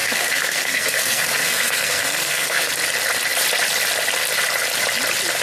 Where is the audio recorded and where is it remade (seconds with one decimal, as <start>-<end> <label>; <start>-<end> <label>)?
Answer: 0.0-2.7 remade; 2.7-5.4 recorded